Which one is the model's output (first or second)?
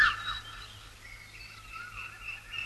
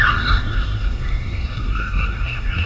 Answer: second